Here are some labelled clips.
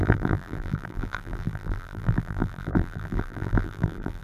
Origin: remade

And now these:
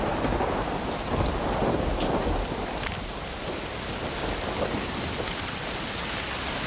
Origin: recorded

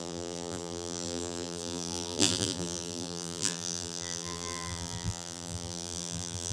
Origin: remade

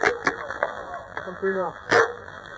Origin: remade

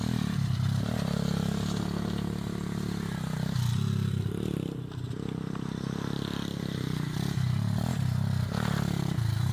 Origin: recorded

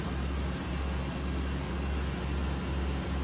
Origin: recorded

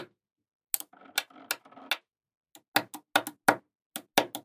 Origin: recorded